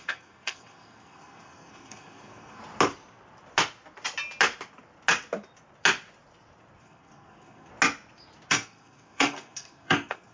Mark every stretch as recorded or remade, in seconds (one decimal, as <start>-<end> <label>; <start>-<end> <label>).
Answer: 0.0-2.6 remade; 2.6-6.8 recorded; 6.8-7.7 remade; 7.7-8.5 recorded; 8.5-10.3 remade